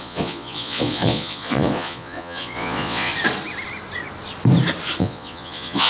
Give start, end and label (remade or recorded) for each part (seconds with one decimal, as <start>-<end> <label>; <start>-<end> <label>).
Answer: 0.0-3.1 remade; 3.1-5.0 recorded; 5.0-5.9 remade